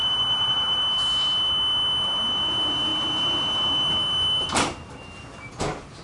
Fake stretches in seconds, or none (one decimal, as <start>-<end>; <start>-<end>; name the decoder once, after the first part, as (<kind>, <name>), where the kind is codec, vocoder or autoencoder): 0.0-0.8 (vocoder, BigVGAN v2)